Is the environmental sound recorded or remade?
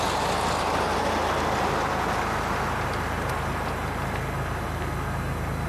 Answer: recorded